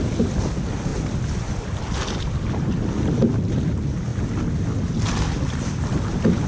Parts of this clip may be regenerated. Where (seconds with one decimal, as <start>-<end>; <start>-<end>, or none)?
none